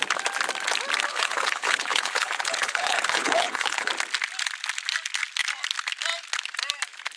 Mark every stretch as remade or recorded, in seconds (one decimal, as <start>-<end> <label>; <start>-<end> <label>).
0.0-1.1 recorded; 1.1-3.9 remade; 3.9-7.2 recorded